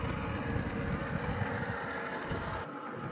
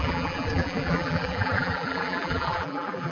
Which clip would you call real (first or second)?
first